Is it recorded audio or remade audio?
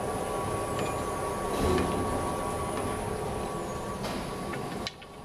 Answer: recorded